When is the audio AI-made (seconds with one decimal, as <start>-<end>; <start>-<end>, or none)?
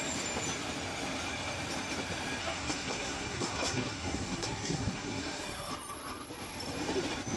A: 2.4-5.7